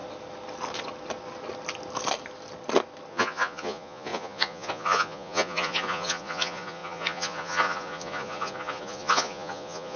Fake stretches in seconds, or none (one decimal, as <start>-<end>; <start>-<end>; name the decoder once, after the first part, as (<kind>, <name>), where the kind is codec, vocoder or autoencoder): 3.1-10.0 (vocoder, Vocos)